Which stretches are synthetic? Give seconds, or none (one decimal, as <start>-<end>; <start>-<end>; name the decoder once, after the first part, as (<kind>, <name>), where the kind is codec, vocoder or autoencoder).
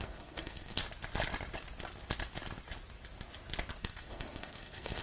0.0-0.8 (codec, SNAC); 3.8-5.0